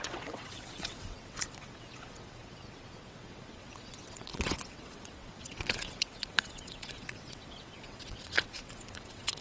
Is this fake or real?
fake